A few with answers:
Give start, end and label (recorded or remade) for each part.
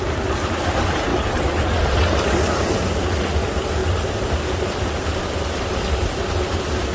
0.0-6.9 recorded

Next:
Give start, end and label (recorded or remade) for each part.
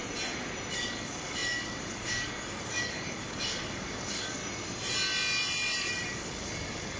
0.0-0.7 recorded; 0.7-4.4 remade; 4.4-5.8 recorded; 5.8-7.0 remade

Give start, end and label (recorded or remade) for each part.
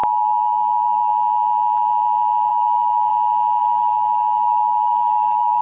0.0-1.1 remade; 1.1-2.5 recorded; 2.5-3.1 remade; 3.1-3.6 recorded; 3.6-5.6 remade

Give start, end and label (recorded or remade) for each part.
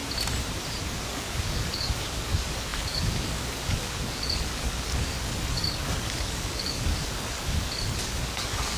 0.0-0.8 recorded; 0.8-8.8 remade